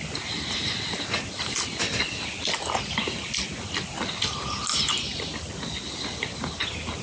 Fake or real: real